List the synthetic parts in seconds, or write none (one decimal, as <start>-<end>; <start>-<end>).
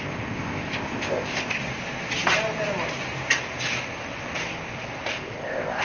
0.0-1.6; 5.1-5.8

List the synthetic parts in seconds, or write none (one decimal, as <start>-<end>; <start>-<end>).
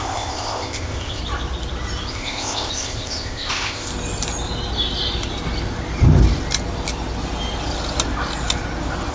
0.0-1.2; 2.1-3.9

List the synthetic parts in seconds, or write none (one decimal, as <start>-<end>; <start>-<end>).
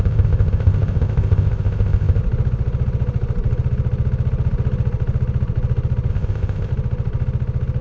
0.0-2.2; 6.1-6.7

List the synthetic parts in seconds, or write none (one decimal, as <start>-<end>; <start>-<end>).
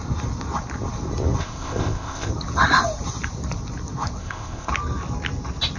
1.4-2.3; 4.2-4.7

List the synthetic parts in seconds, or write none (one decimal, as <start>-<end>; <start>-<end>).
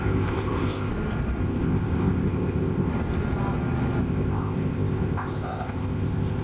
0.0-0.9; 1.4-2.9; 4.0-6.4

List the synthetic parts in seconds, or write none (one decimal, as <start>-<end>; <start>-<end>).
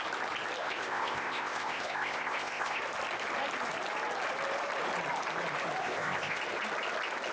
0.6-2.8; 5.8-6.4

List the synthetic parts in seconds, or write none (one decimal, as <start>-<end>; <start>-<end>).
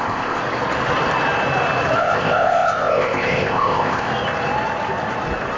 0.0-0.4; 2.0-4.1